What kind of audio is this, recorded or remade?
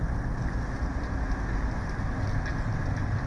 recorded